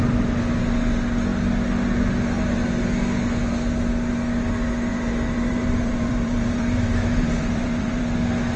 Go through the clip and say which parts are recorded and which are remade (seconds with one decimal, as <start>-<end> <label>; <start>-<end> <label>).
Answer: 0.0-4.9 recorded; 4.9-8.0 remade; 8.0-8.6 recorded